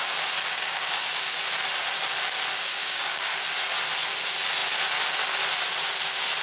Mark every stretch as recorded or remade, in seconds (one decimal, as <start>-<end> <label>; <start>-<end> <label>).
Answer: 0.0-0.4 recorded; 0.4-1.5 remade; 1.5-2.7 recorded; 2.7-3.3 remade; 3.3-6.4 recorded